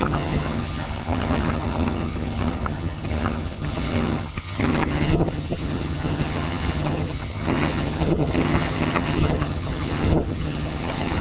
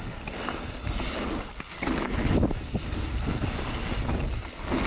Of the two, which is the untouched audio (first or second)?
second